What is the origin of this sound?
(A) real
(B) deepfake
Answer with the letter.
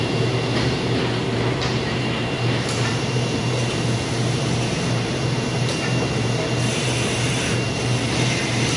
B